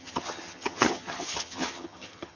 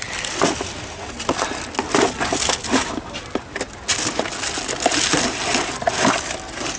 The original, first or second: second